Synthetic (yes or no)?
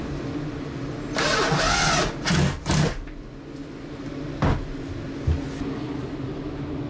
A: no